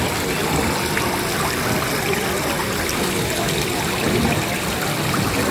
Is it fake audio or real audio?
real